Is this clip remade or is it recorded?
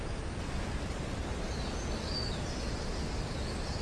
recorded